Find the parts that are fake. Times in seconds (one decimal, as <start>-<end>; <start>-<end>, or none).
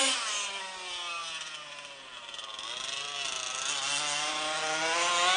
none